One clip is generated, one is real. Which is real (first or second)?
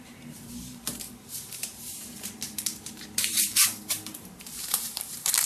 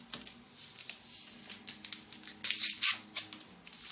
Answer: second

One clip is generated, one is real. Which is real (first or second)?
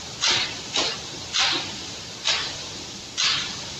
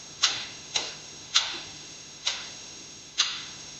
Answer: first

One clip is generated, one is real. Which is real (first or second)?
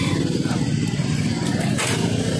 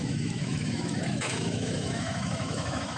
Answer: first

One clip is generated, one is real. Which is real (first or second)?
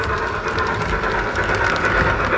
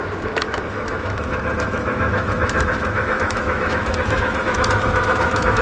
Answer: first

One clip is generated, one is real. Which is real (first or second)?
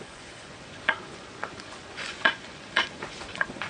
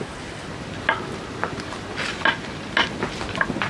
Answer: second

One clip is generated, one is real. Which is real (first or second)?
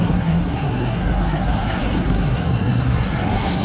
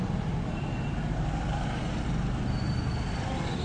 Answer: second